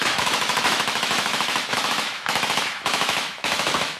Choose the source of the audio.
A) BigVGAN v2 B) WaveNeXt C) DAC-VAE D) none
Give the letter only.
C